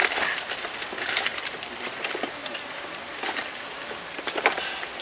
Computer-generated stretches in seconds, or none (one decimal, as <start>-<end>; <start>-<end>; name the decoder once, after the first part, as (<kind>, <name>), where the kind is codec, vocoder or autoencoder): 0.0-0.5 (vocoder, BigVGAN v2); 1.3-1.9; 2.4-3.1